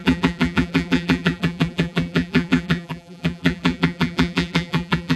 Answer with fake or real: fake